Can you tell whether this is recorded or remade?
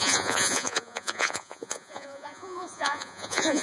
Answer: remade